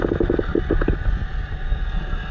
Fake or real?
real